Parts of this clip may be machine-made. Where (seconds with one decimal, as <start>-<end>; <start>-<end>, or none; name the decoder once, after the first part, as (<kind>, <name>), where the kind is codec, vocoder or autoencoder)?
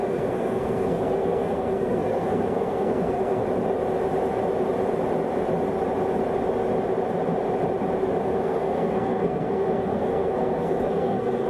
0.0-3.4 (codec, SNAC); 8.2-11.5